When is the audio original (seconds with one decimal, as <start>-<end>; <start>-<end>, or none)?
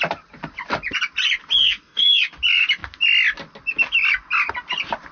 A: 0.0-1.6; 2.2-5.1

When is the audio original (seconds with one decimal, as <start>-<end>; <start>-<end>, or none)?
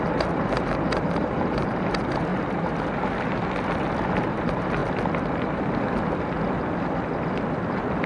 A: 2.3-4.3; 4.8-8.1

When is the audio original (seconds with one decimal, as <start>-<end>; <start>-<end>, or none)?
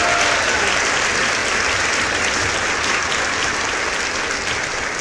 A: 0.0-5.0